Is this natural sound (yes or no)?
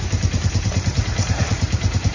no